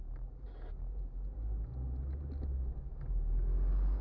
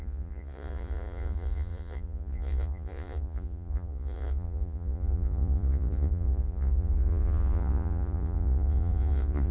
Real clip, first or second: first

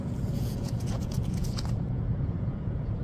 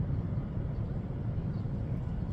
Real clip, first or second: second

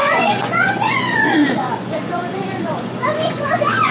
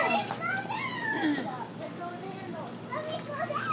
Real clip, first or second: second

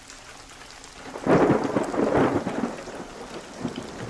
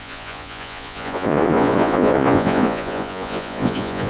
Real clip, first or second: first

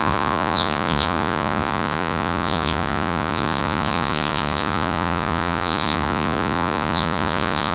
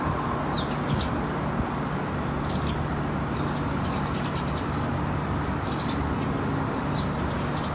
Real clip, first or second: second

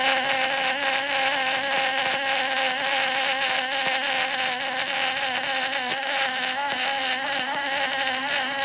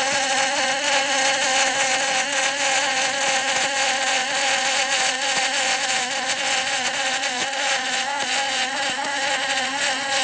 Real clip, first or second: first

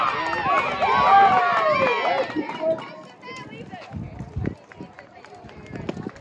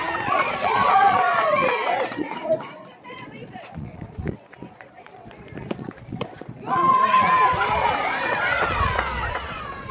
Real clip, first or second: first